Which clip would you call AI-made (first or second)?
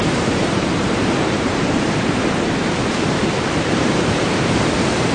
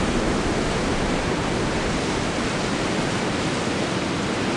first